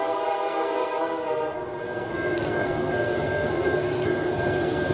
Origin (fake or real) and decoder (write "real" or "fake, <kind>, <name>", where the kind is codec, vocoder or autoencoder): fake, codec, SNAC